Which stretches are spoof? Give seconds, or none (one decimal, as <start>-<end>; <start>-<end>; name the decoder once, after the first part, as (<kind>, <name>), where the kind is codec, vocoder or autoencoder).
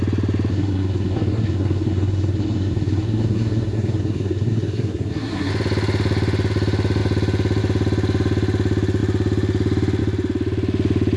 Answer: 0.5-5.5 (codec, SNAC)